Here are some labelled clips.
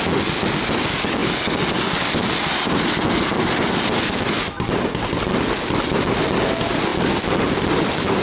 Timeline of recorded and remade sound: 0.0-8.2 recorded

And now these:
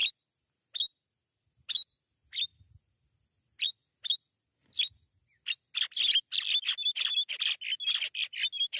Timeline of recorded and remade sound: 0.0-8.8 recorded

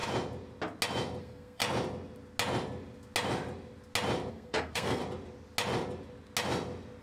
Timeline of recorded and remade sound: 0.0-1.2 recorded; 1.2-1.6 remade; 1.6-4.3 recorded; 4.3-5.0 remade; 5.0-7.0 recorded

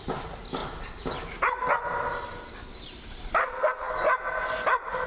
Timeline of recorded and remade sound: 0.0-3.4 recorded; 3.4-3.9 remade; 3.9-5.1 recorded

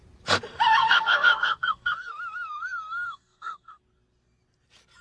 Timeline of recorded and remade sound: 0.0-0.8 recorded; 0.8-3.8 remade; 3.8-5.0 recorded

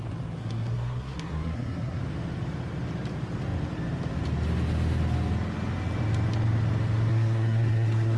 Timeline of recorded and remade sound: 0.0-0.4 recorded; 0.4-2.0 remade; 2.0-7.1 recorded; 7.1-8.2 remade